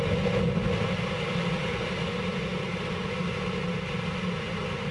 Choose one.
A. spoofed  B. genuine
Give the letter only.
B